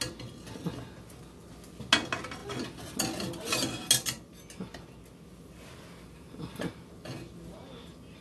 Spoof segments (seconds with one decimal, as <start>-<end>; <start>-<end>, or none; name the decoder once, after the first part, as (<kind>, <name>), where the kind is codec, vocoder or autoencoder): none